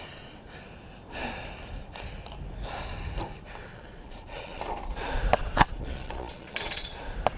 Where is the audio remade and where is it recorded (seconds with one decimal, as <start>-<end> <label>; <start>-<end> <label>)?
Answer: 0.0-3.7 recorded; 3.7-4.6 remade; 4.6-5.4 recorded; 5.4-7.0 remade; 7.0-7.4 recorded